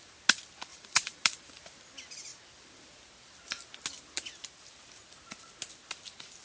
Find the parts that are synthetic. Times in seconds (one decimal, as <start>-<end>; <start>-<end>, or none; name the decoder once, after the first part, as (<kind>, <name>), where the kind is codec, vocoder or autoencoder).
0.7-1.5 (vocoder, BigVGAN v2)

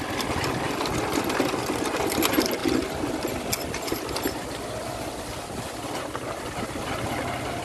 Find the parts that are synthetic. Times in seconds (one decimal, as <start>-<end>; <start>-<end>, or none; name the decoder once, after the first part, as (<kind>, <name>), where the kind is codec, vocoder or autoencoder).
none

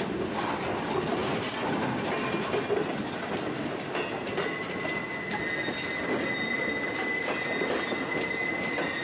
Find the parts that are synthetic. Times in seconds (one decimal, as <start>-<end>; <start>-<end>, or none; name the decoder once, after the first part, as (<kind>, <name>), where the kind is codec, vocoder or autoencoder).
none

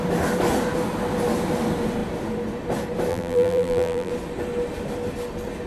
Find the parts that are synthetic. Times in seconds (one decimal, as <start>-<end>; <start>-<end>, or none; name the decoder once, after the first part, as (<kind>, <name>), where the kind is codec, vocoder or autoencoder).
3.1-4.1 (vocoder, BigVGAN v2)

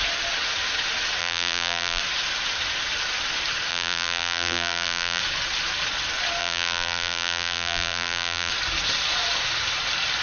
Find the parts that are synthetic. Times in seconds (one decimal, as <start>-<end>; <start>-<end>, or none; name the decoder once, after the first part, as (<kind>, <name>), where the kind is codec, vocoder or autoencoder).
1.2-2.0 (vocoder, BigVGAN v2); 3.7-5.2; 6.4-8.5

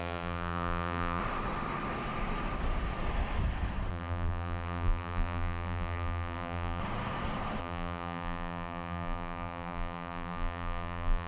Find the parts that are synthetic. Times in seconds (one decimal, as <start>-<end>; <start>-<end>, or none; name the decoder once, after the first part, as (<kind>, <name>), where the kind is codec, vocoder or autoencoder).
0.0-1.2 (vocoder, BigVGAN v2); 3.9-6.8; 7.6-11.3